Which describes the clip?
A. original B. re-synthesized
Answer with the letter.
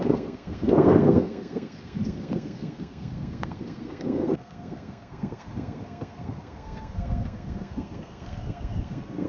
B